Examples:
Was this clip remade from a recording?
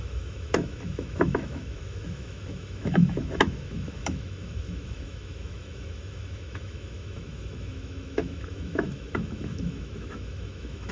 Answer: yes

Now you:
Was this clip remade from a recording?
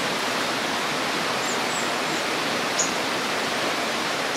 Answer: no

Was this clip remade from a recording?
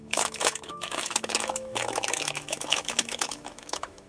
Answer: yes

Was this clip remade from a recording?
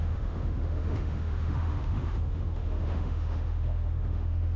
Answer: yes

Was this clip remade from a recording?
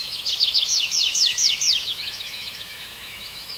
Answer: yes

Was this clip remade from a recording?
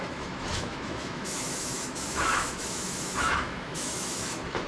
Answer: yes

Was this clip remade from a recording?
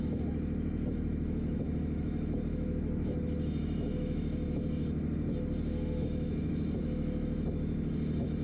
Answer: yes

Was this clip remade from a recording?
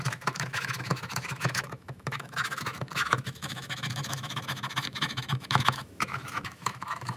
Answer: yes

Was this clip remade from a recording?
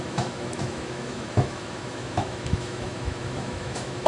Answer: yes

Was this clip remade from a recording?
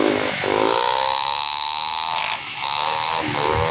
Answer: yes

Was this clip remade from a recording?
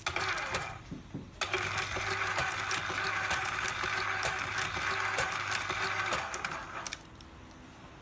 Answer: no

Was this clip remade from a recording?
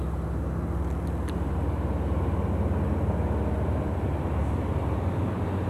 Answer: no